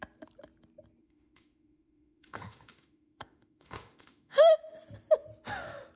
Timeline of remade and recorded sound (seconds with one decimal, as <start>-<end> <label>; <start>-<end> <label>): 0.0-1.0 recorded; 1.0-4.6 remade; 4.6-6.0 recorded